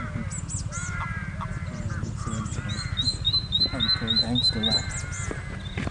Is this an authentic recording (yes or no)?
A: yes